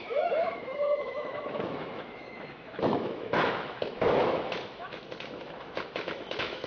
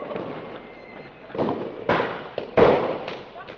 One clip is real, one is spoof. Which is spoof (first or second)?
first